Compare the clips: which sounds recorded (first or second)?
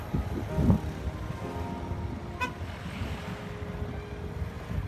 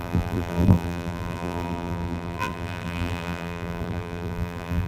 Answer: first